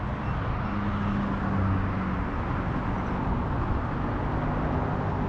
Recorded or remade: recorded